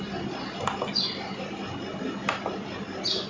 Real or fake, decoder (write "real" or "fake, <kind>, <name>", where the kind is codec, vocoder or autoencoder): real